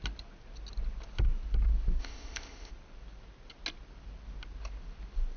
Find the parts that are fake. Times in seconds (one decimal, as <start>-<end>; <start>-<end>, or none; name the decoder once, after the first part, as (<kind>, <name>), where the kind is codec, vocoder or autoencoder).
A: 2.0-2.7 (codec, ZipCodec)